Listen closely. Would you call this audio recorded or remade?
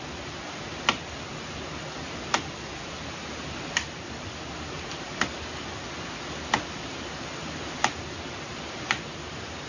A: remade